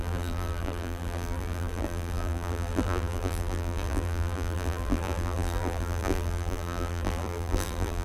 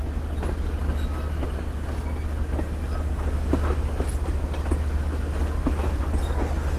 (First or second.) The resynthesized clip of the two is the first